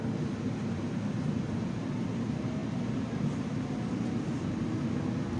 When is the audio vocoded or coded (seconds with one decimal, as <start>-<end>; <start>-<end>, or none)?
0.0-2.6